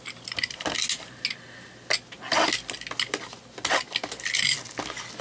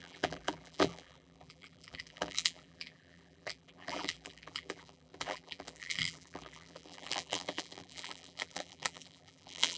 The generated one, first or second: second